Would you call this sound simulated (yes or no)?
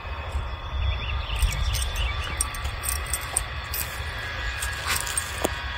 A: no